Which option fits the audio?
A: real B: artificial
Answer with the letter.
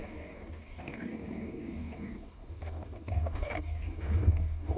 B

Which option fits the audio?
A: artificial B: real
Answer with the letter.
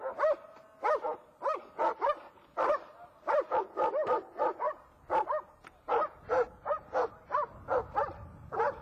B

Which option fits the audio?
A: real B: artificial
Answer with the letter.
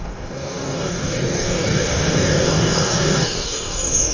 B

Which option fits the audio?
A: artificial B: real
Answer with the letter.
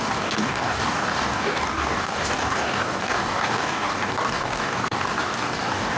A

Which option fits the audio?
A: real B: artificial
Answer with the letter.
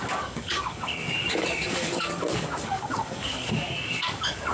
B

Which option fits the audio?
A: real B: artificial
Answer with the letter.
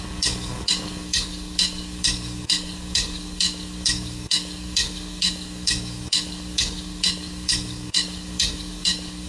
B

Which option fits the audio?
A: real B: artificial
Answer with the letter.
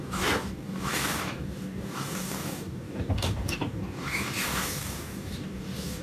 B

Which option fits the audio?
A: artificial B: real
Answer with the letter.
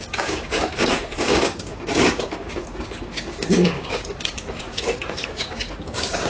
A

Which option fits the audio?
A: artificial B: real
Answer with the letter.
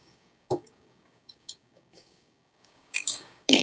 A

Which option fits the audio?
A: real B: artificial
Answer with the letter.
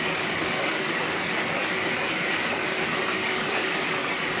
B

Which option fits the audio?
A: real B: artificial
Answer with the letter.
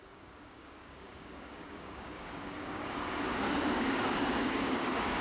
B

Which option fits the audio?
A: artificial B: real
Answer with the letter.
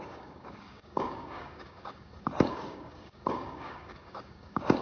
A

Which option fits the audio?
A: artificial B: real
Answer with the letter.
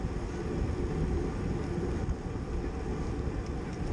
B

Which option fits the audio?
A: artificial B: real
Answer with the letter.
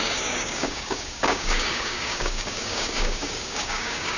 A